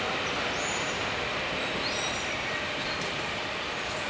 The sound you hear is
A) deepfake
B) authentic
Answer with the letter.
B